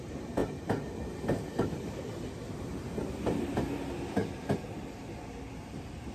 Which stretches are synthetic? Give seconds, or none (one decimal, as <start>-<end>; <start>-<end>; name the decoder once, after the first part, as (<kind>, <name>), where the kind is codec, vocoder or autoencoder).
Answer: 3.0-3.6 (vocoder, BigVGAN v2)